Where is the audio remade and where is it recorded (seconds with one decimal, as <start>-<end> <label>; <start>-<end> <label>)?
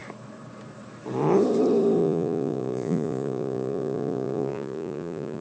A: 0.0-2.0 recorded; 2.0-5.4 remade